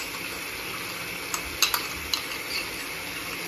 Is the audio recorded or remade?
recorded